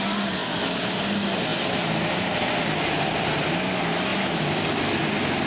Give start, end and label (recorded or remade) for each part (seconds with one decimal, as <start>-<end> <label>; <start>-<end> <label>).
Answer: 0.0-5.5 recorded